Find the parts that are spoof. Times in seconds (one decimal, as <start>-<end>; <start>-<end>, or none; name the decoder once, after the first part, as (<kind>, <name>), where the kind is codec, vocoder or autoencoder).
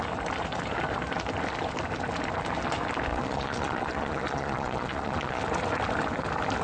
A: 3.1-5.4 (vocoder, Vocos)